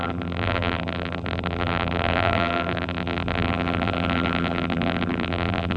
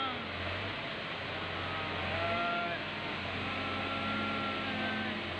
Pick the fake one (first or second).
first